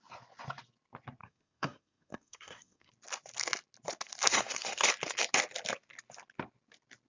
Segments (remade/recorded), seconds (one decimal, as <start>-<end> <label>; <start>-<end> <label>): 0.0-1.2 recorded; 1.2-2.9 remade; 2.9-4.3 recorded; 4.3-4.9 remade; 4.9-7.1 recorded